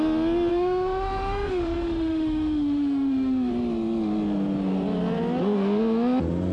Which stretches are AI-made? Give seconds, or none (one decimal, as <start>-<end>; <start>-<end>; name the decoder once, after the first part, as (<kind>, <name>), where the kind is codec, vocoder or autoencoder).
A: 0.5-3.5 (autoencoder, DAC-VAE)